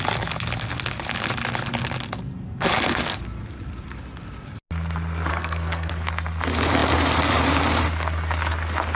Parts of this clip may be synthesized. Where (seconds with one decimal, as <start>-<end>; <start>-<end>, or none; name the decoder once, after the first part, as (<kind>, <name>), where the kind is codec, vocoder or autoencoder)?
5.3-5.9 (codec, SNAC)